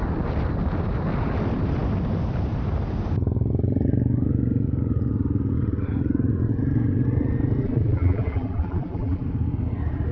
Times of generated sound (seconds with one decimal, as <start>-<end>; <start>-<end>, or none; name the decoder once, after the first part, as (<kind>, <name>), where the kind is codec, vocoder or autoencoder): 7.6-9.2 (vocoder, BigVGAN v2)